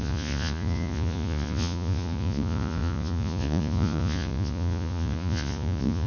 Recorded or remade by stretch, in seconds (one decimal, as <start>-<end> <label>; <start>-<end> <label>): 0.0-6.1 remade